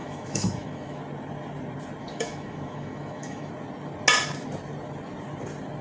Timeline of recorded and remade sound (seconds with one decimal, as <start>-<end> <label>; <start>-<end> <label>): 0.0-1.0 remade; 1.0-2.0 recorded; 2.0-3.5 remade; 3.5-5.8 recorded